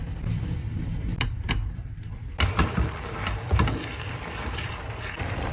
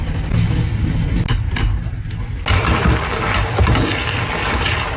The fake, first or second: first